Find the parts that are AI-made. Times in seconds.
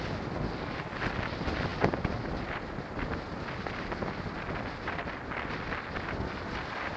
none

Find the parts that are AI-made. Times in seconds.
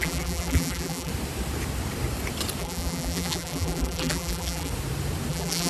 0.0-1.1; 2.6-4.7; 5.3-5.7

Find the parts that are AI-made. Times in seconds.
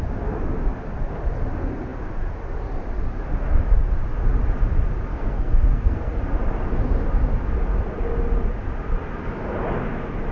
5.1-6.2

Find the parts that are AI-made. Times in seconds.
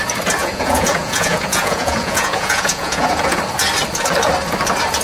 0.4-3.4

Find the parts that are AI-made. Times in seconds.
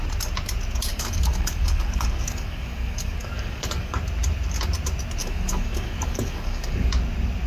0.9-4.0; 5.2-6.9